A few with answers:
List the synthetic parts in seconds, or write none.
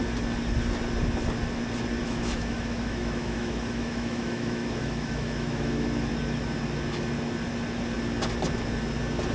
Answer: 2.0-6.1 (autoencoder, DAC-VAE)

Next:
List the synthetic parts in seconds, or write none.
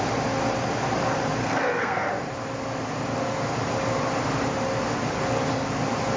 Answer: 1.4-2.1 (codec, SNAC)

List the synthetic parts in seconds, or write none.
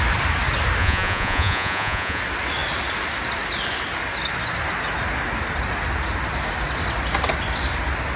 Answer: 0.8-2.2 (vocoder, Vocos)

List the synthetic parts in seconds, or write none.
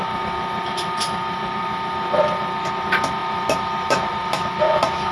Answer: 3.2-4.1 (vocoder, BigVGAN v2)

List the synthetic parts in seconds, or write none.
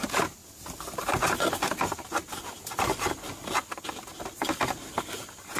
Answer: none